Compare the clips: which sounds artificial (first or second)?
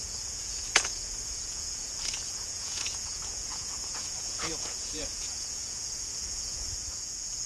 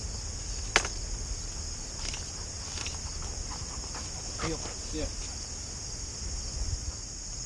first